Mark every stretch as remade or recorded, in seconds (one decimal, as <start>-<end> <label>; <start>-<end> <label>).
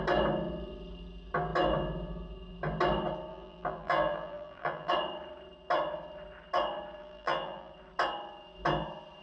0.0-3.3 recorded; 3.3-4.9 remade; 4.9-7.0 recorded; 7.0-7.7 remade; 7.7-9.2 recorded